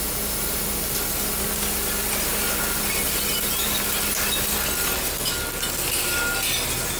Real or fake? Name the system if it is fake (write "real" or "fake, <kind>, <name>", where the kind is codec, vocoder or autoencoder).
real